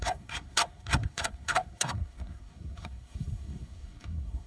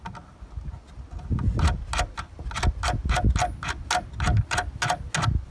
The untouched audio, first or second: second